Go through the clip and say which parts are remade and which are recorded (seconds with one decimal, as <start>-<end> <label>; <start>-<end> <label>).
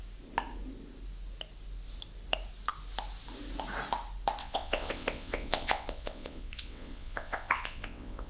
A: 0.0-4.4 recorded; 4.4-8.3 remade